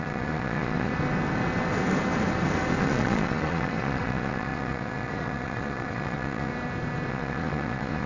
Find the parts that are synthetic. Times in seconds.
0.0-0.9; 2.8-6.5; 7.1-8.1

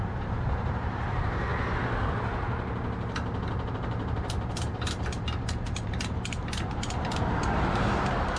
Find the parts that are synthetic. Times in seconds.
0.0-1.5; 3.7-8.4

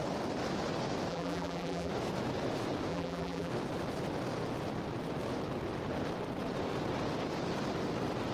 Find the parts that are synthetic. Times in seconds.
1.1-1.9; 2.9-3.5

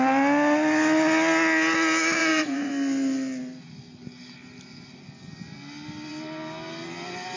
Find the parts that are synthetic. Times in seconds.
2.2-2.7

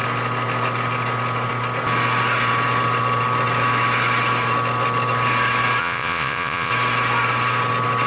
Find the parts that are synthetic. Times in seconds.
5.8-6.7

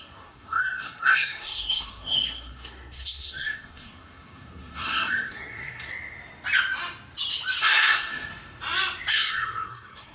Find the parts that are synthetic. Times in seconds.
0.0-5.9; 7.6-8.3; 9.1-10.1

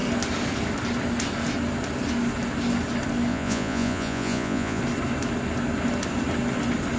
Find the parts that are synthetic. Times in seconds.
3.3-4.8

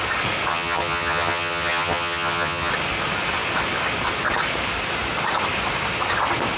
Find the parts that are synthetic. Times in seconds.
0.5-2.7